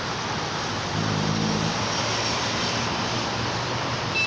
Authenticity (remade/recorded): recorded